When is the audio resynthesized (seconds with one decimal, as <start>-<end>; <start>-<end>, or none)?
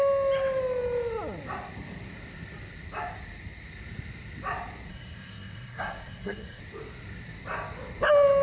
4.9-6.6